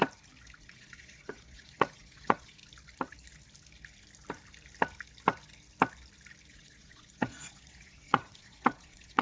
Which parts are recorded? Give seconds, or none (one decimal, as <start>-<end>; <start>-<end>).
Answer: 0.0-0.6; 2.6-6.5